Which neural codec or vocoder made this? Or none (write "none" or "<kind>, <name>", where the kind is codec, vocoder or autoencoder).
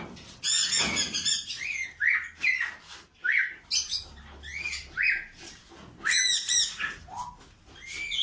none